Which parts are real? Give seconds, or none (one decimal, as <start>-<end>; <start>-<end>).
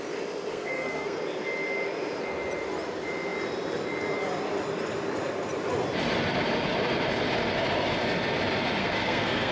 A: 0.0-0.5; 1.2-8.8